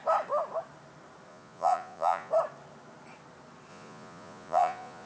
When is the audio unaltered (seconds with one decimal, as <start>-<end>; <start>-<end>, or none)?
0.0-1.3; 2.3-3.7